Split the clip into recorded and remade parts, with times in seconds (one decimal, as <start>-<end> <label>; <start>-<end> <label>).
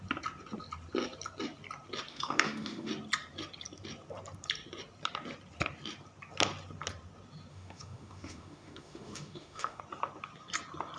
0.0-2.1 recorded; 2.1-2.9 remade; 2.9-7.5 recorded; 7.5-9.8 remade; 9.8-11.0 recorded